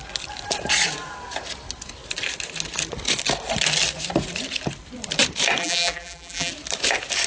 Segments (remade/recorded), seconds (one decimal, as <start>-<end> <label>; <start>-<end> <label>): 0.0-5.6 recorded; 5.6-6.5 remade; 6.5-7.3 recorded